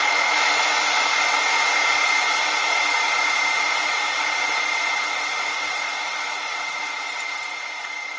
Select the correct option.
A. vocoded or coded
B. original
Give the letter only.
B